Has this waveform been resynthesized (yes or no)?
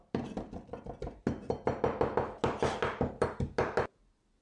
no